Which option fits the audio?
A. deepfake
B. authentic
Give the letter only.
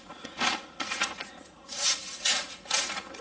A